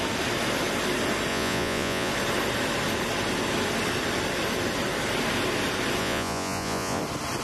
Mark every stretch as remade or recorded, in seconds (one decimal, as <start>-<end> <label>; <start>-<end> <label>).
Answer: 0.0-1.3 recorded; 1.3-2.1 remade; 2.1-6.0 recorded; 6.0-7.0 remade; 7.0-7.4 recorded